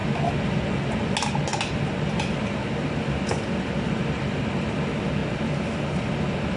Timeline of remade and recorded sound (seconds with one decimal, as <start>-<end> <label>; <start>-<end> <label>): 0.0-6.6 recorded